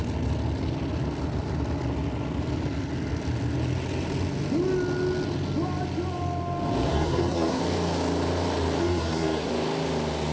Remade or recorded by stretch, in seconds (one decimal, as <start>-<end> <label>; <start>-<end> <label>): 0.0-6.9 recorded; 6.9-7.6 remade; 7.6-8.8 recorded; 8.8-9.5 remade; 9.5-10.3 recorded